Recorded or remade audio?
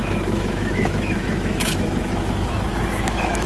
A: remade